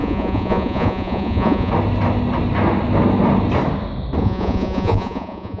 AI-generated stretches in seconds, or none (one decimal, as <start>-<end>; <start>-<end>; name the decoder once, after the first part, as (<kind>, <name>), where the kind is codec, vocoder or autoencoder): 0.0-1.7 (vocoder, Vocos); 4.2-5.6